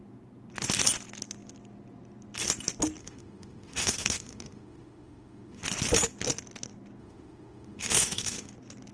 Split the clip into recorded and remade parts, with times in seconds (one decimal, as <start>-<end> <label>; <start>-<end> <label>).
0.0-3.0 recorded; 3.0-5.6 remade; 5.6-7.0 recorded; 7.0-8.5 remade; 8.5-8.9 recorded